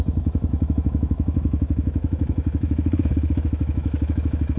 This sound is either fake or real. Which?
fake